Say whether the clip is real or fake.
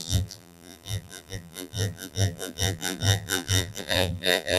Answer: fake